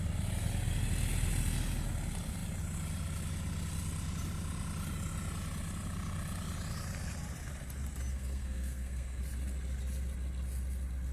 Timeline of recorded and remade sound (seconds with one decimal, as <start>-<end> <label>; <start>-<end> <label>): 0.0-8.1 recorded; 8.1-9.2 remade; 9.2-11.1 recorded